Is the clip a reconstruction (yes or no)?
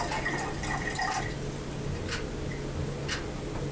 no